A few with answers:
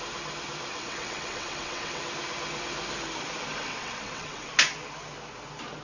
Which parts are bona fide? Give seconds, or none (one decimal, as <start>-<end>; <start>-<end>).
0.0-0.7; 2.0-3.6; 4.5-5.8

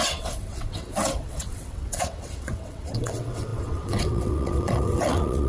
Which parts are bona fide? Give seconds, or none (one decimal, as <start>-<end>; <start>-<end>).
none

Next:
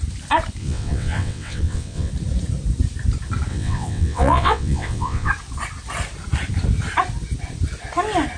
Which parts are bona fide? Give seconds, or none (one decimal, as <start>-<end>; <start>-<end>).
0.0-0.6; 2.1-3.5; 5.3-8.4

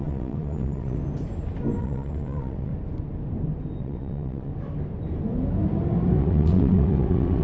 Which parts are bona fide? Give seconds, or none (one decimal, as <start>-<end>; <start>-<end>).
1.0-1.8; 2.7-3.8; 4.5-6.2

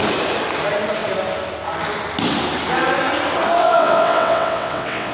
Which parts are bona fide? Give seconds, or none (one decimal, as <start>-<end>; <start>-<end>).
0.0-3.6

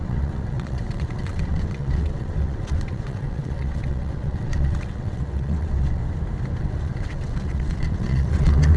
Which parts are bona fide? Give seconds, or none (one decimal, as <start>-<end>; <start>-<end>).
6.0-6.6

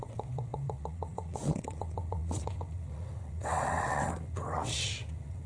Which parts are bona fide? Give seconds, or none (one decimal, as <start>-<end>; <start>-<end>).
none

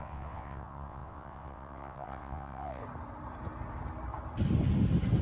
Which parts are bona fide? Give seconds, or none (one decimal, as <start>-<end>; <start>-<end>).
2.8-5.2